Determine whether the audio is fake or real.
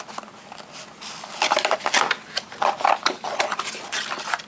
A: real